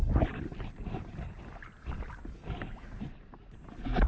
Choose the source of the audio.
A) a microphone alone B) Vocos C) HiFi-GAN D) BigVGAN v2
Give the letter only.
A